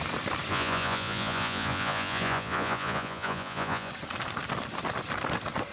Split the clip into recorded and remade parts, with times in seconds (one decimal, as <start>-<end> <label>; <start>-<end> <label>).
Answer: 0.0-0.5 recorded; 0.5-3.9 remade; 3.9-5.7 recorded